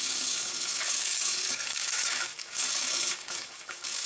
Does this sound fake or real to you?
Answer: fake